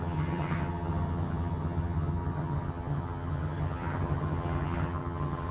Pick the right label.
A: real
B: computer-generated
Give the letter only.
B